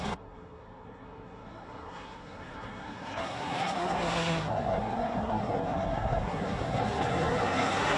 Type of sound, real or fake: fake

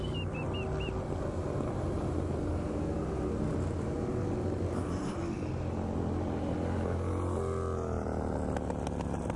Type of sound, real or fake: real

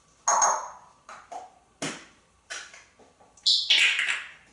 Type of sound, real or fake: real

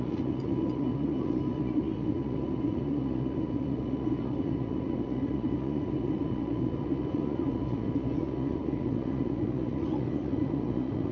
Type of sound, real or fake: fake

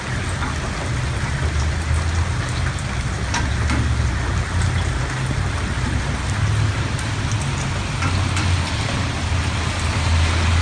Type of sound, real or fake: real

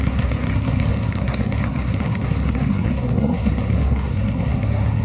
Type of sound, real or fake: fake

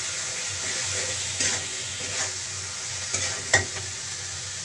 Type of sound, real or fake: fake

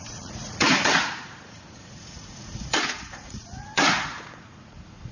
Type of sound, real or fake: fake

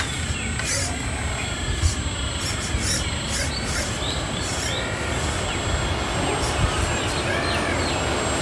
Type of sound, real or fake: real